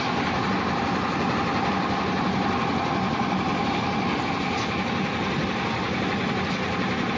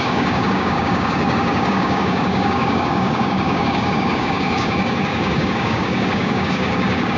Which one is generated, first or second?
second